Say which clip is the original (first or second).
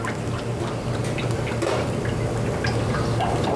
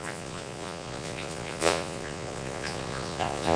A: first